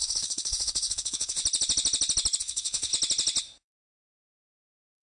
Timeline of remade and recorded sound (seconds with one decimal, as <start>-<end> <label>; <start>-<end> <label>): 0.0-1.4 remade; 1.4-2.4 recorded; 2.4-2.9 remade; 2.9-3.4 recorded; 3.4-5.0 remade